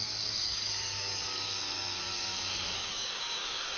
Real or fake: fake